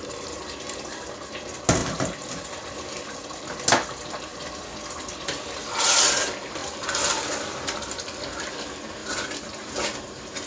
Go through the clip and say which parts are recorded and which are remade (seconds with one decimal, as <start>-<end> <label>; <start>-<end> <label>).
0.0-9.0 recorded; 9.0-10.5 remade